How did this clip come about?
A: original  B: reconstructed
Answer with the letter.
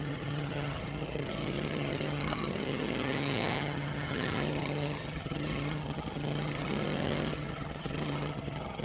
B